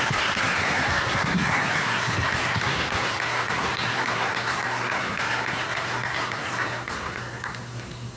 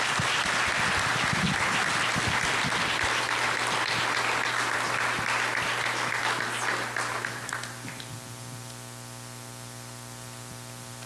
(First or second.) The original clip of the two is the second